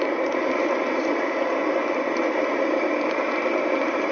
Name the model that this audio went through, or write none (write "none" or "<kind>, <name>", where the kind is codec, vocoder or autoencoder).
vocoder, BigVGAN v2